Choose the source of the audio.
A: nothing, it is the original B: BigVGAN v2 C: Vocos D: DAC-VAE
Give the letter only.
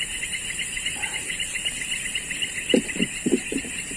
B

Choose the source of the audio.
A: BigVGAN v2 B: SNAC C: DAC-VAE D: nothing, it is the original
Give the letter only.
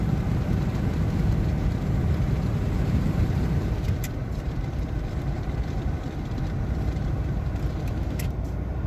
A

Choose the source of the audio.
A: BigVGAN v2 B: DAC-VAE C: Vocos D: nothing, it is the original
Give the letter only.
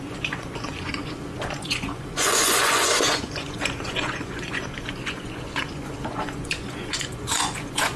C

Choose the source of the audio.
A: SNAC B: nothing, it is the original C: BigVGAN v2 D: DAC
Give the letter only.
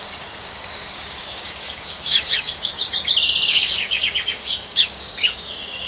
D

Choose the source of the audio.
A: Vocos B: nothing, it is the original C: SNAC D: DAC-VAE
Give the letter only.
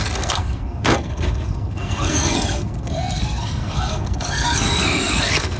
C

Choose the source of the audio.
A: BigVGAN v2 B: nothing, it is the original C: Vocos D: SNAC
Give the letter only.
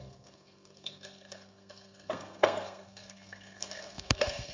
D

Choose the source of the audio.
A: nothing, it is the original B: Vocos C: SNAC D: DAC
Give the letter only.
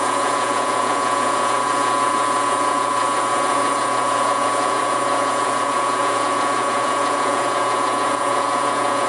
B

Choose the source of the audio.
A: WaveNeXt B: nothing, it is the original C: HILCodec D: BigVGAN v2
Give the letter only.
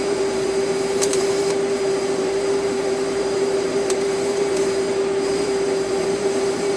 D